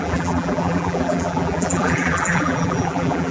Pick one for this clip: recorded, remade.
remade